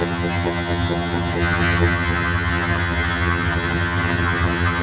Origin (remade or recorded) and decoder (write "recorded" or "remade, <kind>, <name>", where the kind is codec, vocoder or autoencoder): remade, vocoder, HiFi-GAN